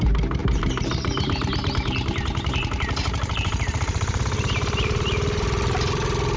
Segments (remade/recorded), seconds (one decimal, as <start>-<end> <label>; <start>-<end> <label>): 0.0-6.4 remade